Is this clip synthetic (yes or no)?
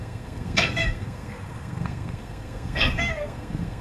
yes